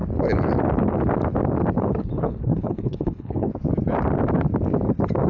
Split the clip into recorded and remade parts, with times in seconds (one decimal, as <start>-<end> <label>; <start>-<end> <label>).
0.0-1.8 recorded; 1.8-3.5 remade; 3.5-5.3 recorded